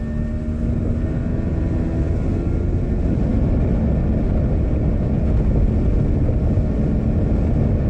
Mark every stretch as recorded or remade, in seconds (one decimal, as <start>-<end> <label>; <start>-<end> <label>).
0.0-7.9 recorded